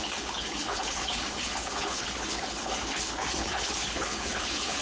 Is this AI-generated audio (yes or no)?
yes